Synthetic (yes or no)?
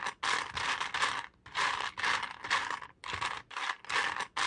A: no